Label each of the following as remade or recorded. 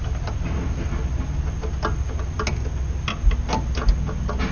recorded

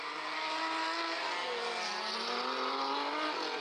recorded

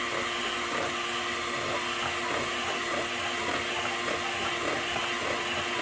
recorded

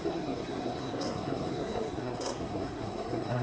remade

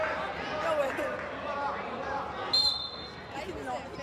recorded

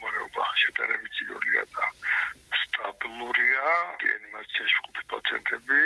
recorded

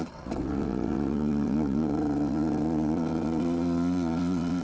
remade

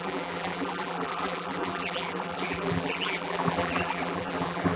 remade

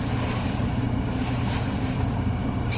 remade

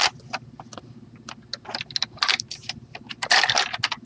recorded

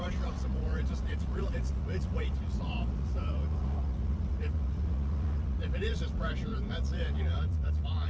remade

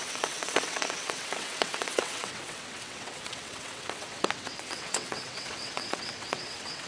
remade